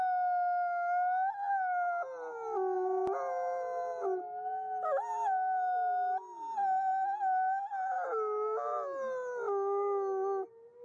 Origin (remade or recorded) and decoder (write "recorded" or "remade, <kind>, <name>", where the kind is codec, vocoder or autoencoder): recorded